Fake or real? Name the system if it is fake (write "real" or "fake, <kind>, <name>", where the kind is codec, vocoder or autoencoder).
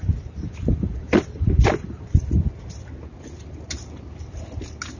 real